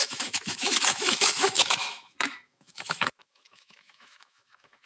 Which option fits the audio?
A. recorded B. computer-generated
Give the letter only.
B